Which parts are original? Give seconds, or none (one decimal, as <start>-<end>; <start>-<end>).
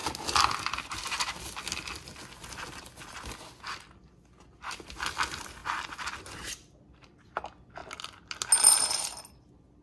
0.0-9.8